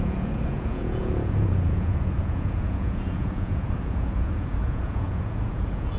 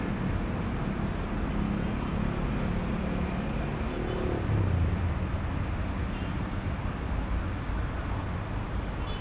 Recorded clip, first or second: second